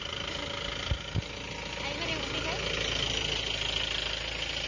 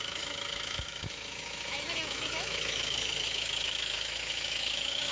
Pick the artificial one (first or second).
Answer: second